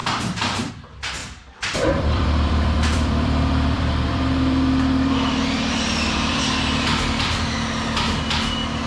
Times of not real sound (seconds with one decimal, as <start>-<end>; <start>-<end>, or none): 0.0-0.7; 1.2-6.4